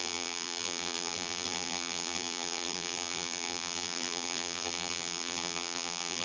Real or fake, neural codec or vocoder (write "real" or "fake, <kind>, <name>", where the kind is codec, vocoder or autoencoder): fake, vocoder, BigVGAN v2